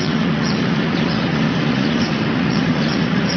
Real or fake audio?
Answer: fake